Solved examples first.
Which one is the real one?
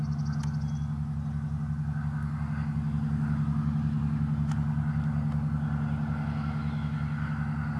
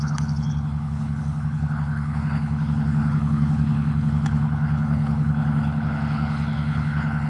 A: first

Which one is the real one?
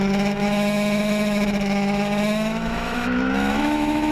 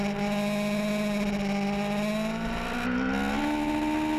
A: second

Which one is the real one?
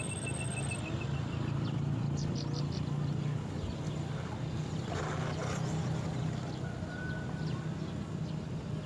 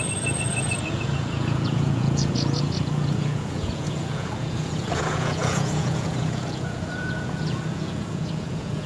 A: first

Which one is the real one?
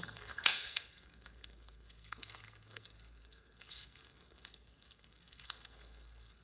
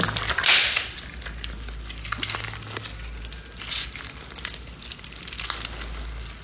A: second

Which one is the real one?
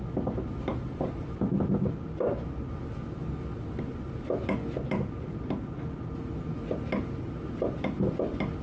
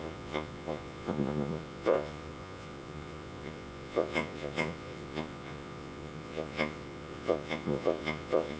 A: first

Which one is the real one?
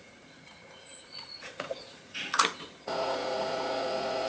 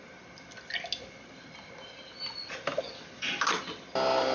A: second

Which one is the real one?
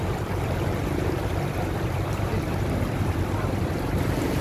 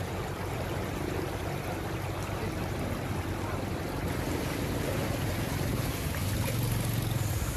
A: second